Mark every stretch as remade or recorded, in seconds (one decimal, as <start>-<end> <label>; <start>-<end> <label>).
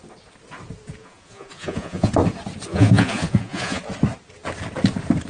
0.0-1.0 recorded; 1.0-2.1 remade; 2.1-2.7 recorded; 2.7-3.8 remade; 3.8-5.3 recorded